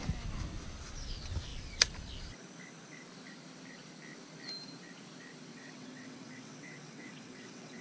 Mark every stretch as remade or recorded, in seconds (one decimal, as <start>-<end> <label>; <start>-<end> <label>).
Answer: 0.0-5.5 recorded; 5.5-7.8 remade